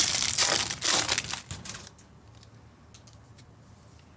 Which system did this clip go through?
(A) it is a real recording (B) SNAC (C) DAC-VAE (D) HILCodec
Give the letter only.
A